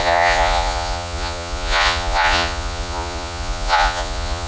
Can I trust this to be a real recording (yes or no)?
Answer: no